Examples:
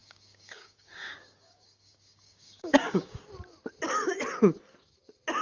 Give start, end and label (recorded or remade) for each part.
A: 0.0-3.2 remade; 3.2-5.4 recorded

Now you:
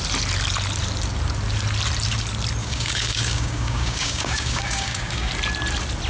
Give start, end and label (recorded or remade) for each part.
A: 0.0-2.6 recorded; 2.6-5.3 remade; 5.3-6.1 recorded

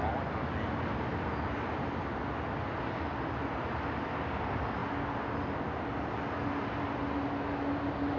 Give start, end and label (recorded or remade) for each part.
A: 0.0-8.2 recorded

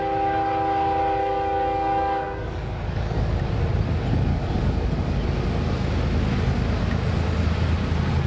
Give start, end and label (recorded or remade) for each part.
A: 0.0-1.2 recorded; 1.2-3.4 remade; 3.4-4.3 recorded; 4.3-5.2 remade; 5.2-8.3 recorded

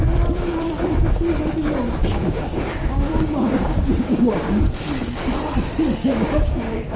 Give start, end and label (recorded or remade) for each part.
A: 0.0-2.0 recorded; 2.0-4.6 remade; 4.6-6.0 recorded; 6.0-7.0 remade

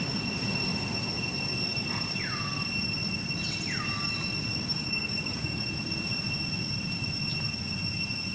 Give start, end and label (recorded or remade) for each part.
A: 0.0-4.5 recorded; 4.5-5.6 remade; 5.6-8.3 recorded

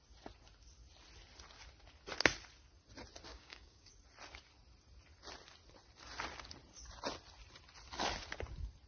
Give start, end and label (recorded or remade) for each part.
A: 0.0-3.3 recorded; 3.3-3.9 remade; 3.9-8.9 recorded

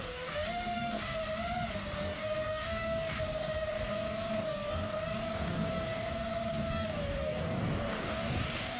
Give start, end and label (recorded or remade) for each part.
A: 0.0-1.2 remade; 1.2-1.7 recorded; 1.7-8.8 remade